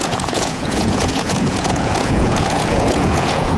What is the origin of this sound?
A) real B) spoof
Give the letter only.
B